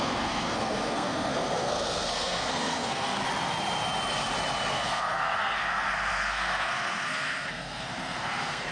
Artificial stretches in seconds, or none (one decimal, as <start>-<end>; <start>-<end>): 0.0-3.2; 4.7-8.7